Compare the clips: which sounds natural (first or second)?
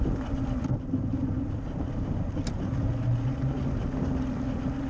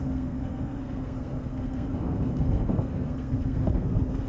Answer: first